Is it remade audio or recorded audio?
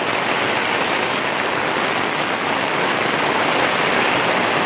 recorded